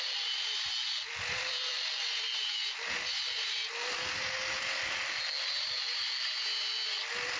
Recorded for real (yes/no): yes